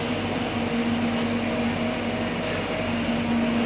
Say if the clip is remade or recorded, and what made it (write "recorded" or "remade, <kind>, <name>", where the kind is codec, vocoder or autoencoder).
recorded